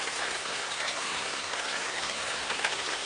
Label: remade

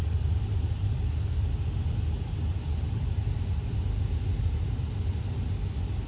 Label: recorded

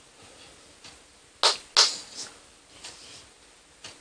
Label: recorded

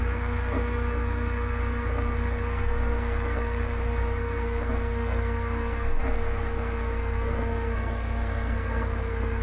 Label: remade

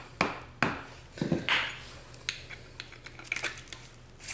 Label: recorded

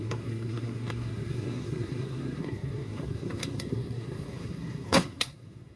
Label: remade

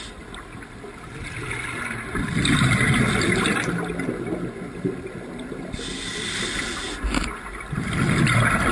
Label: recorded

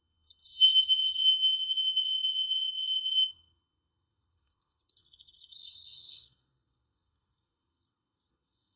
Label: remade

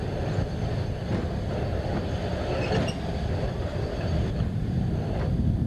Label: recorded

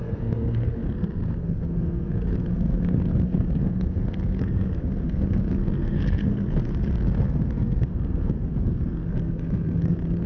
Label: remade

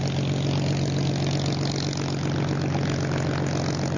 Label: recorded